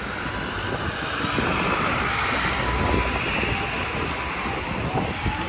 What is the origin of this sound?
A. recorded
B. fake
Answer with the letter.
A